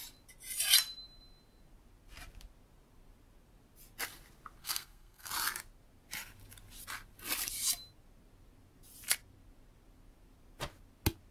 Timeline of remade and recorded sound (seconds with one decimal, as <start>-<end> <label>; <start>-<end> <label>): 0.0-4.6 recorded; 4.6-5.3 remade; 5.3-11.3 recorded